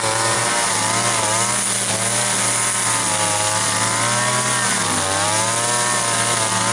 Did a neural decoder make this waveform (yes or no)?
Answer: no